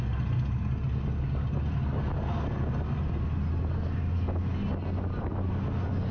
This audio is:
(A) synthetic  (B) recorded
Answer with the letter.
B